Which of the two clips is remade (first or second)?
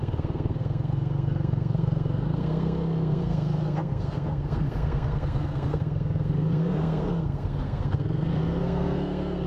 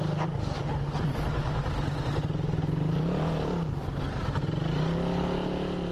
first